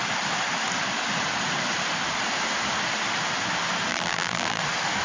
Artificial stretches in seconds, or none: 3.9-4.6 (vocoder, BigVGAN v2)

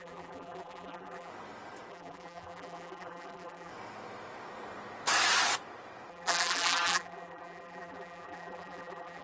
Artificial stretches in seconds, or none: 0.0-1.3 (vocoder, BigVGAN v2); 1.9-3.7; 6.1-9.2

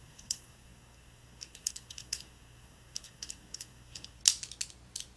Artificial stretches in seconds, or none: 0.0-4.2 (codec, SNAC)

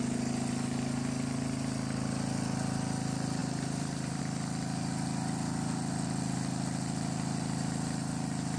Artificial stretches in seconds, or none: 3.4-4.2 (vocoder, BigVGAN v2)

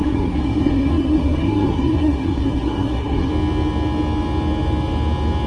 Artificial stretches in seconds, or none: 0.0-3.3 (codec, SNAC)

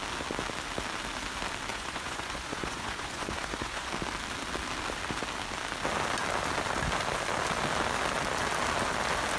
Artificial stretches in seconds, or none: 1.7-3.9 (vocoder, Vocos)

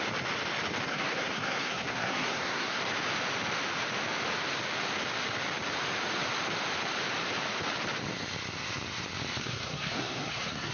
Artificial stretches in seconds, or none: 0.9-2.8 (codec, SNAC); 9.4-10.7